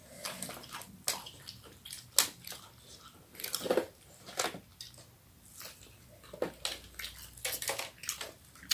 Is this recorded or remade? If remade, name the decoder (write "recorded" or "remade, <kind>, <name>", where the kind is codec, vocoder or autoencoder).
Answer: recorded